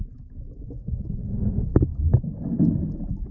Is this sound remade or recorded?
recorded